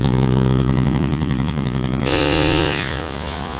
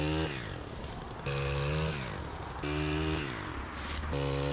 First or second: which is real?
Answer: second